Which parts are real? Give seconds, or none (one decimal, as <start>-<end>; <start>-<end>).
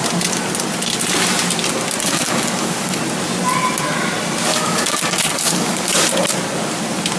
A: 0.0-2.0; 3.0-4.5; 6.1-7.2